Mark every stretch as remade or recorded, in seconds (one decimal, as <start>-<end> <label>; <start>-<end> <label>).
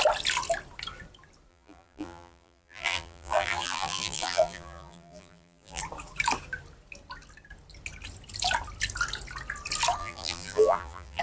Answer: 0.0-1.5 recorded; 1.5-5.8 remade; 5.8-10.0 recorded; 10.0-11.2 remade